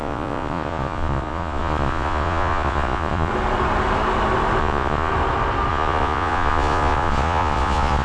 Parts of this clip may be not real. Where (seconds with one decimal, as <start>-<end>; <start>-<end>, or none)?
0.0-3.3; 4.6-5.1; 5.7-8.0